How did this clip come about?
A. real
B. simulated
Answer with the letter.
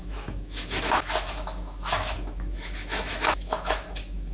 B